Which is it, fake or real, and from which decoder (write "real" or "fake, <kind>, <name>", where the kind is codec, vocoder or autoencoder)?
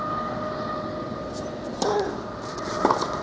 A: real